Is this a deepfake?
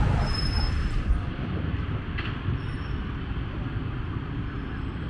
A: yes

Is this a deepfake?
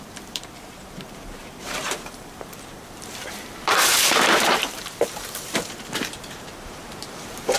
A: yes